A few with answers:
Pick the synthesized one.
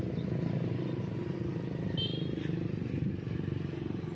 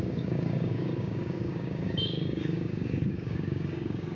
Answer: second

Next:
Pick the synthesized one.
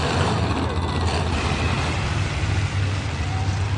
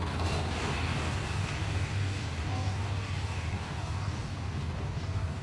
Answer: second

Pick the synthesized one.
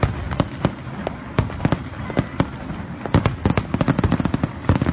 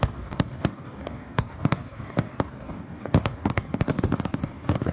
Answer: second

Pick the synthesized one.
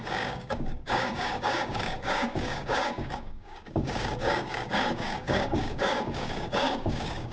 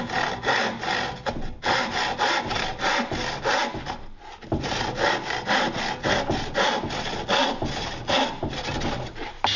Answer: first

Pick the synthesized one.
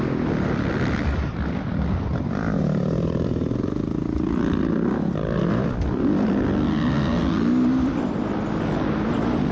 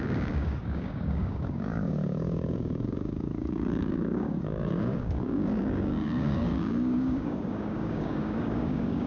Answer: second